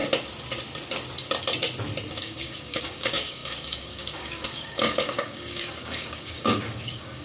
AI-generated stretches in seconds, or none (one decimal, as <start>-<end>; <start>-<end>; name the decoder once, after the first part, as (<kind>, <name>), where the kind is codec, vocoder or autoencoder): 2.1-7.2 (codec, DAC)